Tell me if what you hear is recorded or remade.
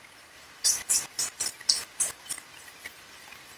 recorded